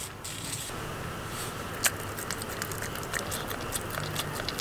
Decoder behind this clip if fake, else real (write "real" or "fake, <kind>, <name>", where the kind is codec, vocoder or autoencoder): real